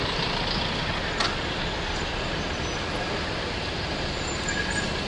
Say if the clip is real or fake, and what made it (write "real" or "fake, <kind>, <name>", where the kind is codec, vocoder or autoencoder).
real